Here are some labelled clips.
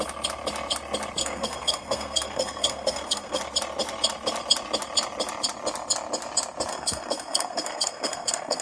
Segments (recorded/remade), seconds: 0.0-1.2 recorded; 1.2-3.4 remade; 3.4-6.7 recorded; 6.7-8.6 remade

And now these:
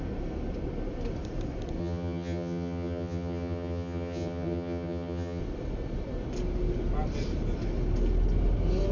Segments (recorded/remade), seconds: 0.0-1.8 recorded; 1.8-5.4 remade; 5.4-8.9 recorded

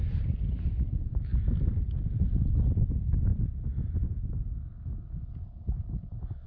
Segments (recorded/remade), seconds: 0.0-6.5 recorded

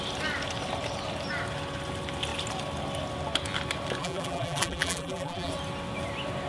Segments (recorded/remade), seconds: 0.0-4.0 recorded; 4.0-5.5 remade; 5.5-6.5 recorded